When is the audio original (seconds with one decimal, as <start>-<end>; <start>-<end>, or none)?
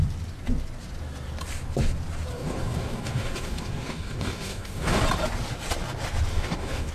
0.0-2.3; 5.0-6.3